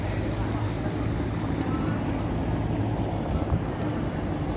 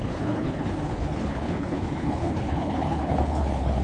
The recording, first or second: first